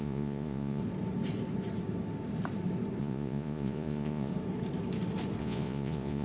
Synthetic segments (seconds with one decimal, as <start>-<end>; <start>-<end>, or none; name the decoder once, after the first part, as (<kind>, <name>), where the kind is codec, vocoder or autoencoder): 0.0-0.8 (vocoder, Vocos); 3.0-4.3; 5.4-6.2